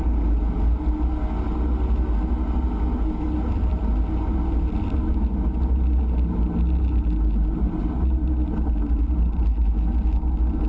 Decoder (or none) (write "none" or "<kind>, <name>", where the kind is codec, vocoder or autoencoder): none